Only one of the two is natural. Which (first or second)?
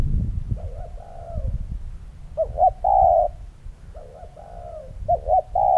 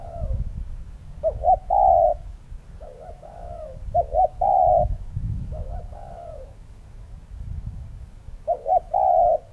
first